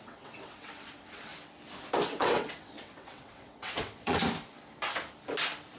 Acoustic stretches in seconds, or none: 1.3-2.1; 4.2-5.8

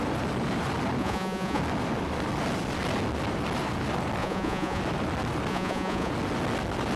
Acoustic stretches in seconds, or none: 0.0-1.0; 1.6-4.2; 4.8-5.5; 6.1-7.0

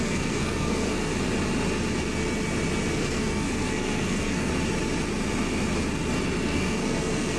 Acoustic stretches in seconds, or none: 1.1-3.0; 4.5-6.4